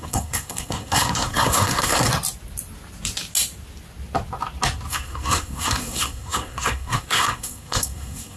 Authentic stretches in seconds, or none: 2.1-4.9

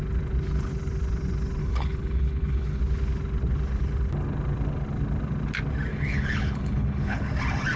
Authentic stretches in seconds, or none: 0.0-1.6; 2.8-5.9; 7.3-7.8